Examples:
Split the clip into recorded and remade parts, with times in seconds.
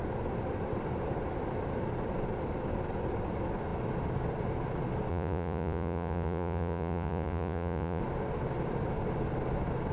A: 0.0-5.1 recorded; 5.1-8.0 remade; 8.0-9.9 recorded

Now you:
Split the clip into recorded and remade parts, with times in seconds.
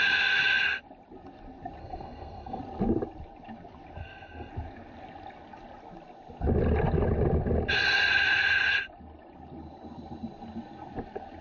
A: 0.0-1.8 recorded; 1.8-2.6 remade; 2.6-4.0 recorded; 4.0-4.5 remade; 4.5-11.4 recorded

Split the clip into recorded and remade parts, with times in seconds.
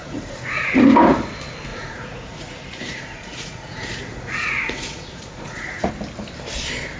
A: 0.0-0.8 remade; 0.8-1.7 recorded; 1.7-5.9 remade; 5.9-7.0 recorded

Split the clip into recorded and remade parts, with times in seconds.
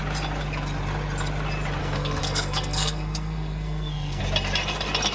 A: 0.0-1.8 recorded; 1.8-4.2 remade; 4.2-5.1 recorded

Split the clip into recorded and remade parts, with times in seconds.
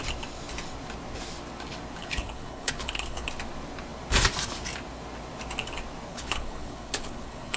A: 0.0-2.0 recorded; 2.0-3.3 remade; 3.3-6.1 recorded; 6.1-7.6 remade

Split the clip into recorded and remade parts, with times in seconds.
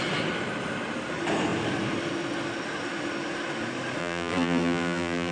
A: 0.0-4.0 recorded; 4.0-5.3 remade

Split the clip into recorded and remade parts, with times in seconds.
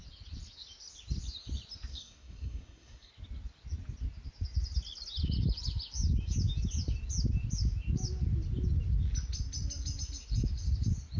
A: 0.0-1.9 recorded; 1.9-3.1 remade; 3.1-11.2 recorded